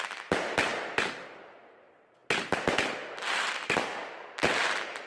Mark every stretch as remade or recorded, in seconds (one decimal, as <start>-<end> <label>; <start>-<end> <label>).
0.0-5.1 recorded